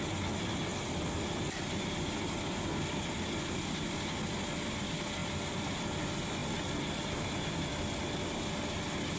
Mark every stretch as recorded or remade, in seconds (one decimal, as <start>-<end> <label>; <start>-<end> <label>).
0.0-9.2 recorded